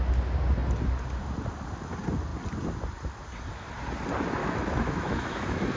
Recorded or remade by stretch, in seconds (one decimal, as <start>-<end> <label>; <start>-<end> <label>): 0.0-4.4 recorded; 4.4-5.8 remade